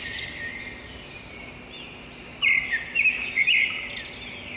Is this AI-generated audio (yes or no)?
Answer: no